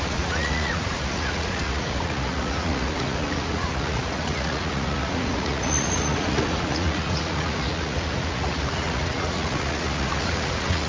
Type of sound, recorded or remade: remade